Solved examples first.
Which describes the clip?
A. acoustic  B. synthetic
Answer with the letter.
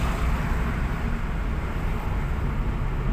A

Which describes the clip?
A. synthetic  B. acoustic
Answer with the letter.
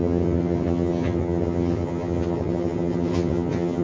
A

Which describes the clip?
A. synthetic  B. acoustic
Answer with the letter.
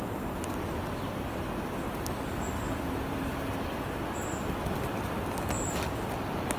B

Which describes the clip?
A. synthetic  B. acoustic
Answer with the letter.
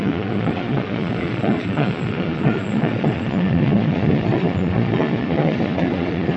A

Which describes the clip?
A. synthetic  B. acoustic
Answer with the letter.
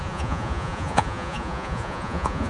A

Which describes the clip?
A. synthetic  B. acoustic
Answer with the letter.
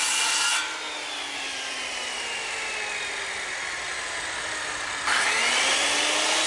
B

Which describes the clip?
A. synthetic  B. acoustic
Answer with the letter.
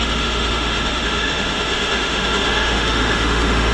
A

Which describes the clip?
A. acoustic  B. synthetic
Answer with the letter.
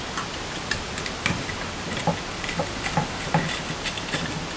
A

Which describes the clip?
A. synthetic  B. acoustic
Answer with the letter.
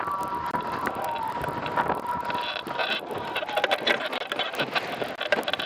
B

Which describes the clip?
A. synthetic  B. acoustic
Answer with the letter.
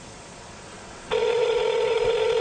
A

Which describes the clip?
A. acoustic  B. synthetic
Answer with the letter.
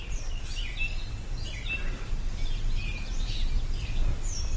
A